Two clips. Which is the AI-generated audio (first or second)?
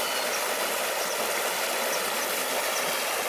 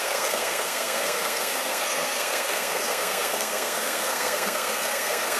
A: second